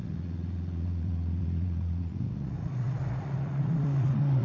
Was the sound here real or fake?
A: fake